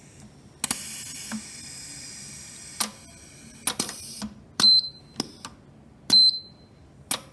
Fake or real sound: real